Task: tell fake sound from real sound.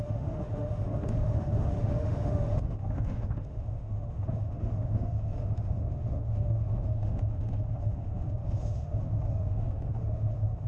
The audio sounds fake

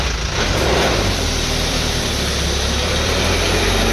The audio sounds fake